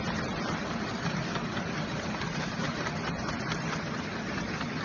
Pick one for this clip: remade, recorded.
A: recorded